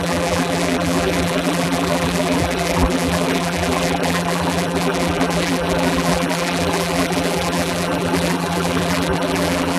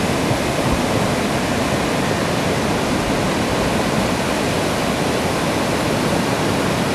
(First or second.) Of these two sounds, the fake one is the first